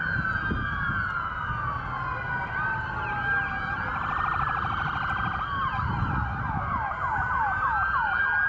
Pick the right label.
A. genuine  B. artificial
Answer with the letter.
A